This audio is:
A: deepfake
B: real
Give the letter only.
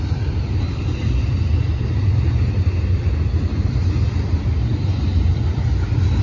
B